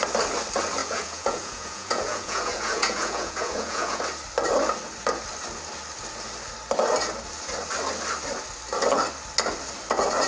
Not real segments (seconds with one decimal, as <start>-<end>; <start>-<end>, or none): 0.8-4.0